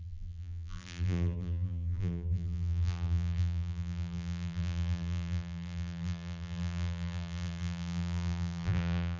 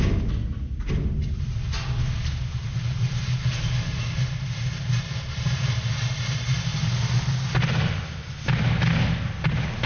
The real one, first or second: second